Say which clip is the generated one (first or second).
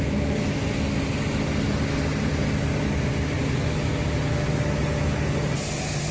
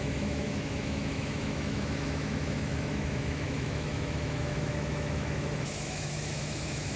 second